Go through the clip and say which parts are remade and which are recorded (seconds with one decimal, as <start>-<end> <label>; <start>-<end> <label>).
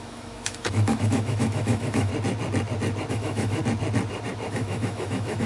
0.0-2.1 remade; 2.1-3.1 recorded; 3.1-3.6 remade; 3.6-4.5 recorded; 4.5-5.5 remade